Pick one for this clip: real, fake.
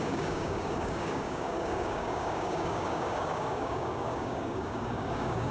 fake